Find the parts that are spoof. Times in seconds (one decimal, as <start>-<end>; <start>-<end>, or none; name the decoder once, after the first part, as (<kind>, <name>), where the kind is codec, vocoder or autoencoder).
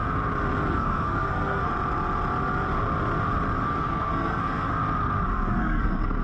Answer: 0.7-1.7 (codec, SNAC); 3.8-4.7; 5.6-6.2